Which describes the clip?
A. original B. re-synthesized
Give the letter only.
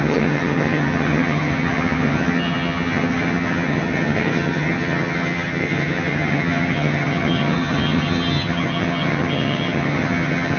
B